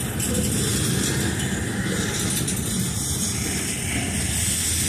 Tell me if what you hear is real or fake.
real